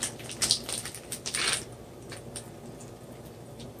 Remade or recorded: recorded